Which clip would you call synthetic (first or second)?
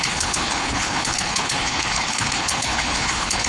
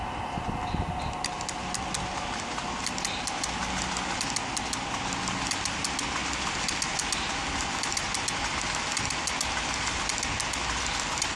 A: first